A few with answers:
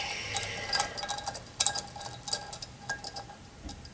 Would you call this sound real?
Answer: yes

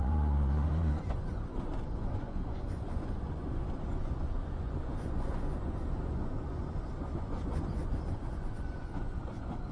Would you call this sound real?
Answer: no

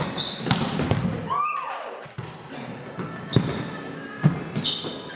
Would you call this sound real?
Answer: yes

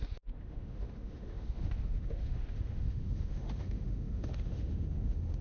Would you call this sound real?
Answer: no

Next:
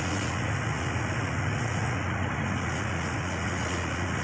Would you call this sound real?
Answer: no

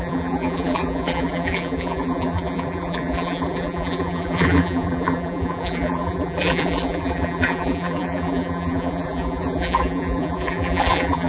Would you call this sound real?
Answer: no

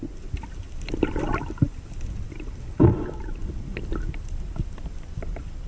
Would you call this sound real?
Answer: yes